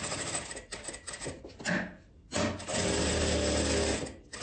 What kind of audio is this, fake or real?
real